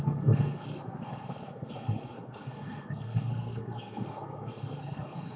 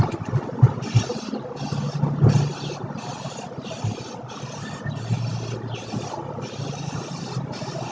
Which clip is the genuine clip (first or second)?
second